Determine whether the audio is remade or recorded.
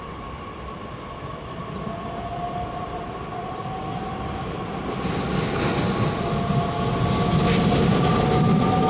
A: recorded